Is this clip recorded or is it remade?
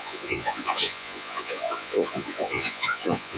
remade